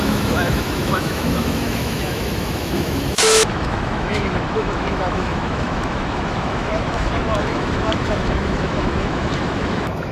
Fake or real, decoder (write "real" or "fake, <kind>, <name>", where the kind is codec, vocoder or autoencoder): fake, autoencoder, DAC-VAE